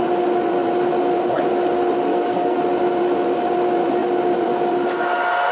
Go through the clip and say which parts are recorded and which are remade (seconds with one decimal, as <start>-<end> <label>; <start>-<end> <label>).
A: 0.0-2.1 recorded; 2.1-2.6 remade; 2.6-5.5 recorded